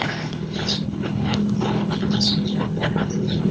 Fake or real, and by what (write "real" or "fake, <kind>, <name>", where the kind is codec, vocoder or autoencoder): fake, codec, HILCodec